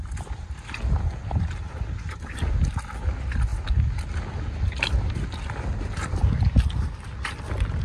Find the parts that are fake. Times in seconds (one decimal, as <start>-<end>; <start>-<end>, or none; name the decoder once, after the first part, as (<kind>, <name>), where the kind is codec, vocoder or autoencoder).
none